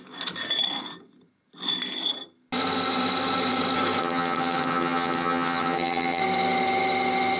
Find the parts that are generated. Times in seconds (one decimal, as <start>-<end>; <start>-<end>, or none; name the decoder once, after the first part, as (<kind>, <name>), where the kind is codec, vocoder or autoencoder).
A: 4.0-6.2 (vocoder, HiFi-GAN)